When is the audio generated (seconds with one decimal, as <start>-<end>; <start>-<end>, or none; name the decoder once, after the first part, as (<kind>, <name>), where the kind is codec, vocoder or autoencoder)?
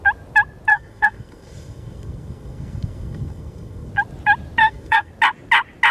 0.7-3.9 (codec, SNAC); 4.6-5.1